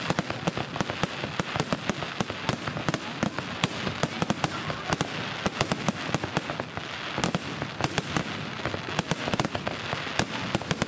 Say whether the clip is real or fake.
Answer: real